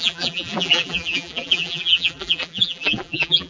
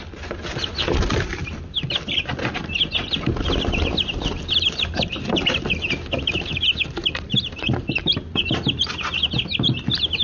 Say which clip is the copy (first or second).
first